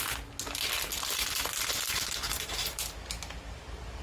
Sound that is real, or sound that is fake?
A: real